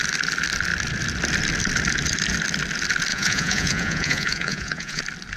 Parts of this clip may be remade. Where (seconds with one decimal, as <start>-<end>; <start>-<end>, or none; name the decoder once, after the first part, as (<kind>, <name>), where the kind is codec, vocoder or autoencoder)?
3.1-5.0 (vocoder, Vocos)